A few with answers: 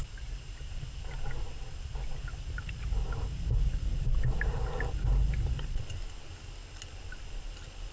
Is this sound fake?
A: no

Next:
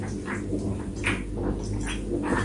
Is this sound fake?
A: no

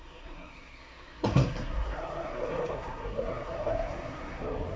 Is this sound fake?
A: yes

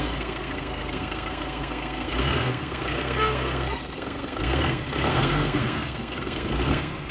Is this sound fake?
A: yes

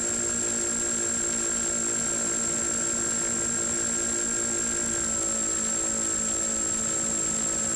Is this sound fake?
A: no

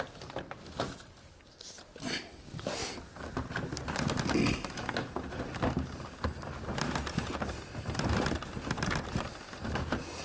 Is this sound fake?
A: no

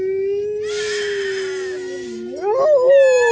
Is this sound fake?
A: no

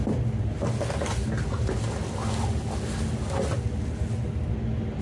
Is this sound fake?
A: no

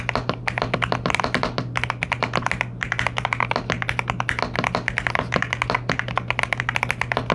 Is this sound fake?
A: no